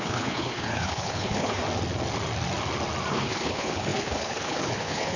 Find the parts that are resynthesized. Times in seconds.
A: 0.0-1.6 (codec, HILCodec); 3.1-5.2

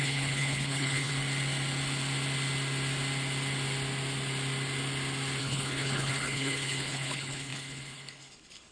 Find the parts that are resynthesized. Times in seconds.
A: 0.0-1.1 (codec, HILCodec); 5.4-8.7

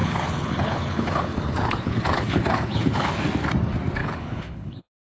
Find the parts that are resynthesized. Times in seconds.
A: 0.0-3.1 (codec, HILCodec); 4.0-4.8

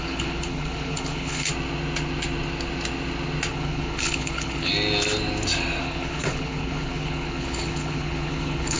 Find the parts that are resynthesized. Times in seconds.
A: 0.0-1.5 (codec, HILCodec); 3.5-4.7; 5.8-8.8

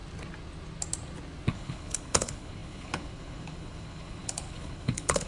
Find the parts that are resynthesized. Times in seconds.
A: 1.5-5.3 (codec, HILCodec)

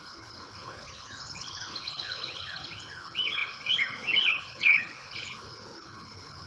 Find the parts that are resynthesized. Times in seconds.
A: 0.0-6.5 (codec, HILCodec)

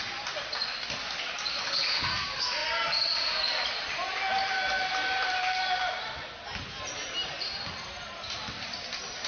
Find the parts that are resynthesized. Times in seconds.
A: 1.6-2.1 (codec, HILCodec)

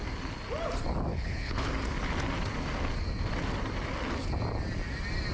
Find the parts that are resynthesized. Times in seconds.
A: 1.1-1.7 (codec, HILCodec)